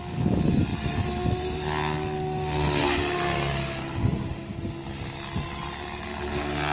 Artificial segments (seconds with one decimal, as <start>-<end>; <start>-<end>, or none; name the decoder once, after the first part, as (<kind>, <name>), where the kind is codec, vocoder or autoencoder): 4.1-4.6 (vocoder, BigVGAN v2)